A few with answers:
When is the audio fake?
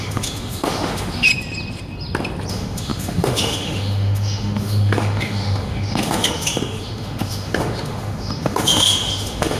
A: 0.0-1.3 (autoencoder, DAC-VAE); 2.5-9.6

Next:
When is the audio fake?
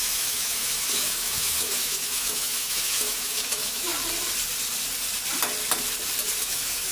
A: 0.0-3.9 (autoencoder, DAC-VAE); 6.4-6.9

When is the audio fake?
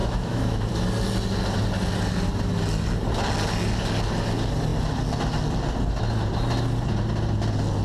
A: 0.0-0.7 (autoencoder, DAC-VAE)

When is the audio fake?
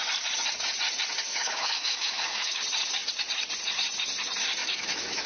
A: 1.3-2.6 (autoencoder, DAC-VAE); 4.6-5.3